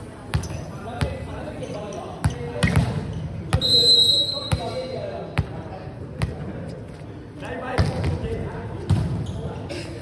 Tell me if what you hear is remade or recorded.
recorded